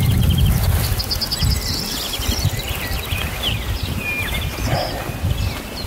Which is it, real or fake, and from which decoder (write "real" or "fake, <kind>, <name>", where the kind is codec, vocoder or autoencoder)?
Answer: real